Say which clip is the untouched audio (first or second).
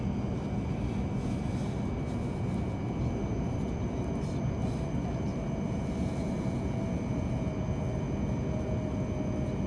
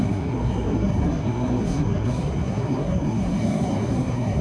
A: first